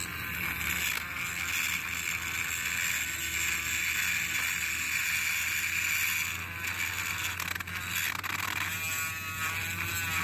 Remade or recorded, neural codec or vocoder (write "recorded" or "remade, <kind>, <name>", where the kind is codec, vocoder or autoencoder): recorded